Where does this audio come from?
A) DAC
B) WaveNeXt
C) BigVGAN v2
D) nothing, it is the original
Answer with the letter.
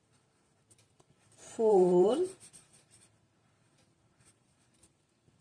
C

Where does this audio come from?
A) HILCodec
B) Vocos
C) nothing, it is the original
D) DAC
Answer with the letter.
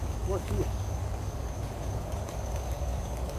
D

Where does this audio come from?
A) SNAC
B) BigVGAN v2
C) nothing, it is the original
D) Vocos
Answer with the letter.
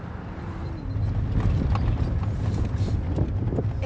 C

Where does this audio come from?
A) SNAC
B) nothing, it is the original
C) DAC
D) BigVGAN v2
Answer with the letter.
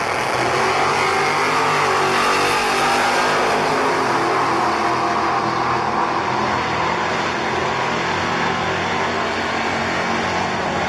B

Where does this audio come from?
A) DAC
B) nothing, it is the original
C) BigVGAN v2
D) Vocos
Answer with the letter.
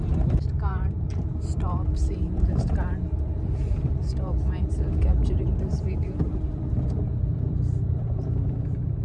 C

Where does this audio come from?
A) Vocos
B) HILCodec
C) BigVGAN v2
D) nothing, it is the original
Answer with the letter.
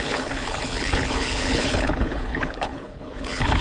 B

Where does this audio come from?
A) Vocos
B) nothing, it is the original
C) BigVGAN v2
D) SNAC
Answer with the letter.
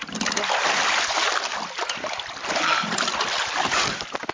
C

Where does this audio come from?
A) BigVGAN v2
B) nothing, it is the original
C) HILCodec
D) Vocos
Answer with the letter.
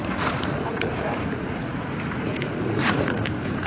D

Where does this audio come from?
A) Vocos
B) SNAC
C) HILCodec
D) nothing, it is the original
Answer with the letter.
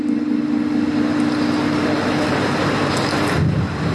D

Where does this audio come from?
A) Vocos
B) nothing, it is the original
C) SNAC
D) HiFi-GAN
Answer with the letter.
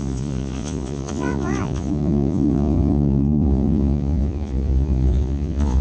A